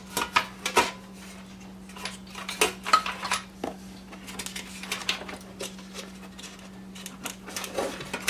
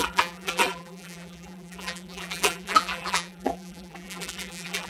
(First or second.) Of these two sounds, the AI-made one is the second